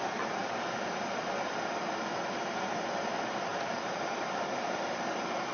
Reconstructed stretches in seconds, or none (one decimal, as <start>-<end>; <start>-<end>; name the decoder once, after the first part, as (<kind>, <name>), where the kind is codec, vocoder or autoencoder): 0.0-0.4 (vocoder, BigVGAN v2); 1.8-5.5